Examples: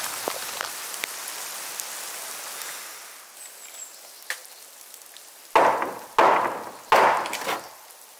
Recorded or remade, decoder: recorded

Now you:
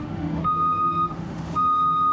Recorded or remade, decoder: remade, autoencoder, DAC-VAE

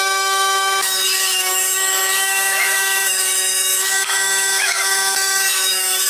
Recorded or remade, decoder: remade, autoencoder, DAC-VAE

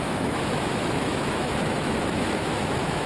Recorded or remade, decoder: remade, autoencoder, DAC-VAE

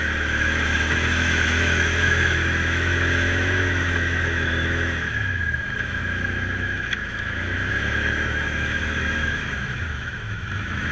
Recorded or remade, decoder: remade, autoencoder, DAC-VAE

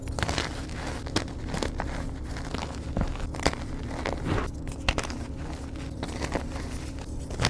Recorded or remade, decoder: recorded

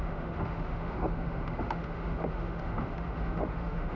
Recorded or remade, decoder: remade, autoencoder, DAC-VAE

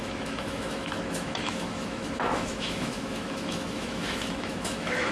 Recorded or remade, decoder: remade, autoencoder, DAC-VAE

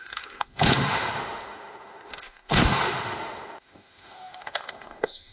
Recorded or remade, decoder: remade, autoencoder, DAC-VAE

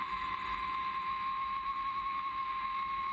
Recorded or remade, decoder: remade, autoencoder, DAC-VAE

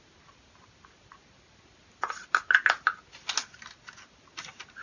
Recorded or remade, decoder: recorded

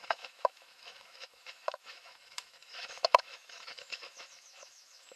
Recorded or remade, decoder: remade, autoencoder, DAC-VAE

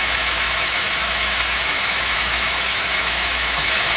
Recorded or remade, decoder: remade, autoencoder, DAC-VAE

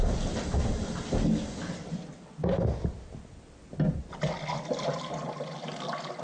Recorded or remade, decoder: recorded